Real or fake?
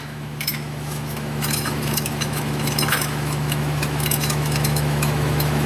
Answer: fake